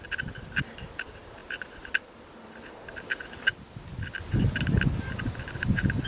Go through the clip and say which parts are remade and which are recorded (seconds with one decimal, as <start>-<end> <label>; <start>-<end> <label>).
0.0-6.1 recorded